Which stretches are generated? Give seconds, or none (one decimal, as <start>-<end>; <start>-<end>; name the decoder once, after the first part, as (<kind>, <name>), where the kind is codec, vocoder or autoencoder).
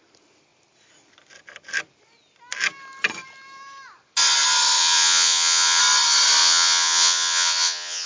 4.8-5.8 (vocoder, Vocos); 6.4-8.1